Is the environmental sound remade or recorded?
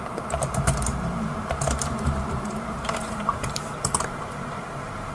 remade